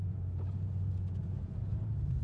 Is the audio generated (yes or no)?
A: yes